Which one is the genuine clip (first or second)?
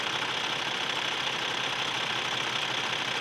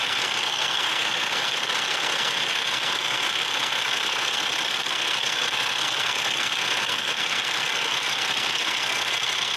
first